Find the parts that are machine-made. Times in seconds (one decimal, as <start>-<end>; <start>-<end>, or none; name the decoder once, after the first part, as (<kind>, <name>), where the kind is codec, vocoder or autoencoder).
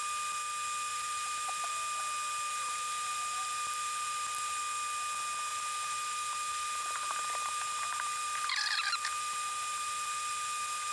0.9-1.7 (vocoder, BigVGAN v2); 2.5-4.6; 5.5-10.9